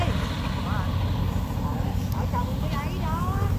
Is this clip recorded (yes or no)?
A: yes